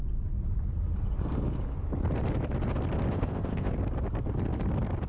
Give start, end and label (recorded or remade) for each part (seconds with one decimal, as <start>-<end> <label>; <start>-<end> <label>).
0.0-3.1 recorded; 3.1-3.7 remade; 3.7-5.1 recorded